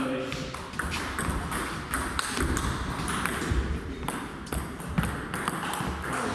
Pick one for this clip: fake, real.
real